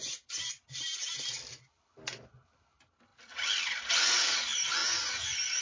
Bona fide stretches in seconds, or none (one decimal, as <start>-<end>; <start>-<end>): 0.0-5.6